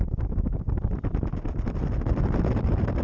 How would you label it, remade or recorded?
recorded